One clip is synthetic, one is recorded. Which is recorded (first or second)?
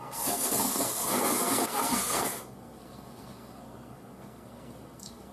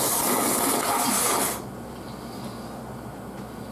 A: second